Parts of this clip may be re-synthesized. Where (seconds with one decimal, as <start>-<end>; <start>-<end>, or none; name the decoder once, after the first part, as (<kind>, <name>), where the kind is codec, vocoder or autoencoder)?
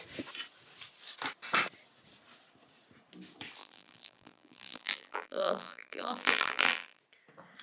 3.6-7.0 (vocoder, BigVGAN v2)